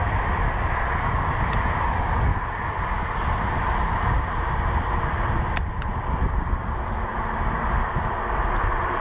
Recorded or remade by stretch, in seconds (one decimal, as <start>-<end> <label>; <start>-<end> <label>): 0.0-9.0 recorded

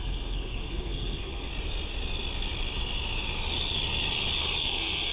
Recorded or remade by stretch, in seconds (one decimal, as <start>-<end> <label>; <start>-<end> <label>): 0.0-1.5 remade; 1.5-4.6 recorded; 4.6-5.1 remade

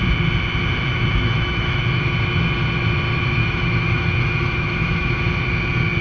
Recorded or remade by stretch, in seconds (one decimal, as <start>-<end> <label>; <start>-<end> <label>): 0.0-0.9 recorded; 0.9-1.8 remade; 1.8-3.4 recorded; 3.4-5.2 remade; 5.2-6.0 recorded

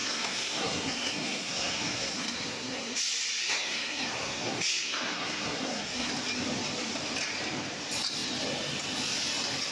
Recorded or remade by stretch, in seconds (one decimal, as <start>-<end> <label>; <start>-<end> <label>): 0.0-3.0 remade; 3.0-3.4 recorded; 3.4-6.1 remade; 6.1-9.7 recorded

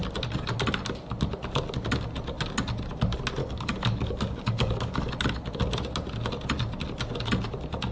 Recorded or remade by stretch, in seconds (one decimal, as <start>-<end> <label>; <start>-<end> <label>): 0.0-3.4 recorded; 3.4-5.1 remade; 5.1-7.9 recorded

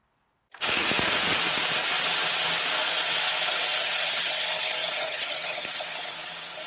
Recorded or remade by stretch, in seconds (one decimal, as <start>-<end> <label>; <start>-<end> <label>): 0.0-0.8 recorded; 0.8-1.6 remade; 1.6-3.7 recorded; 3.7-4.3 remade; 4.3-4.8 recorded; 4.8-6.0 remade; 6.0-6.7 recorded

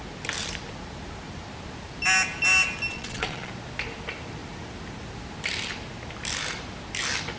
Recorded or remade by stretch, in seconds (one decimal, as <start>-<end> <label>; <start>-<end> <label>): 0.0-2.9 recorded; 2.9-3.5 remade; 3.5-7.4 recorded